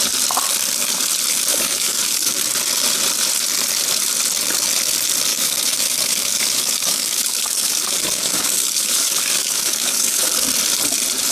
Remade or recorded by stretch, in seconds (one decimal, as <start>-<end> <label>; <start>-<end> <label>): 0.0-1.5 recorded; 1.5-2.4 remade; 2.4-5.3 recorded; 5.3-10.3 remade; 10.3-11.3 recorded